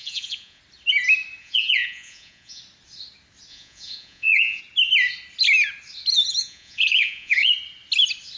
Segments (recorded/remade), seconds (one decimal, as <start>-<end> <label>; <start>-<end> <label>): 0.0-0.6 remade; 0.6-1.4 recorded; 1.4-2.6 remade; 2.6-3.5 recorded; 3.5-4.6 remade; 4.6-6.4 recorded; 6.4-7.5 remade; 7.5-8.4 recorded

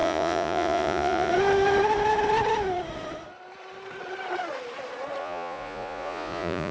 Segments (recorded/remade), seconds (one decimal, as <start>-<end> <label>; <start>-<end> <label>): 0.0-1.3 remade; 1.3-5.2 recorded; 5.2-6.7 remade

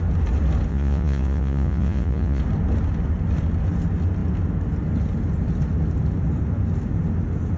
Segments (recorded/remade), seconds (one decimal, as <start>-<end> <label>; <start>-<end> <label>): 0.0-0.7 recorded; 0.7-2.4 remade; 2.4-7.6 recorded

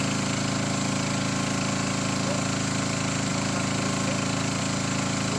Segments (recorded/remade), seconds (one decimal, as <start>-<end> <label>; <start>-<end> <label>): 0.0-5.4 recorded

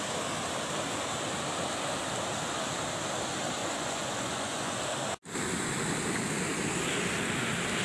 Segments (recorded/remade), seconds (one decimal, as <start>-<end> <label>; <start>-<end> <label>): 0.0-3.6 recorded; 3.6-4.8 remade; 4.8-7.8 recorded